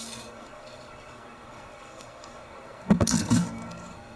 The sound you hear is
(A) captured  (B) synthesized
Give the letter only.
B